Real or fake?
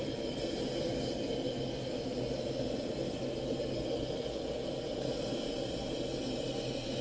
real